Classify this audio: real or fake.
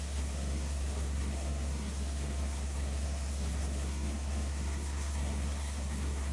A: fake